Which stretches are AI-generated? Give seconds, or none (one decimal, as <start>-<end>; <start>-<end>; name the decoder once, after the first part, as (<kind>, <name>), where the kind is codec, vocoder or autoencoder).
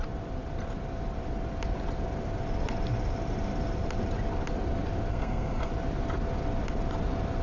5.1-5.7 (codec, SNAC)